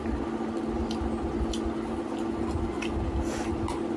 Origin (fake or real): real